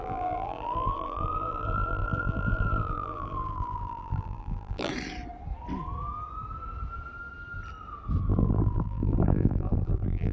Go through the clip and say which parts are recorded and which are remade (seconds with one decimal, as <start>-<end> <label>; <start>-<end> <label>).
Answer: 0.0-4.9 remade; 4.9-8.3 recorded; 8.3-10.3 remade